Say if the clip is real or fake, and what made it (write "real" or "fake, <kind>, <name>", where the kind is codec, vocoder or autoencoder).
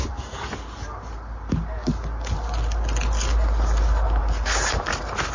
real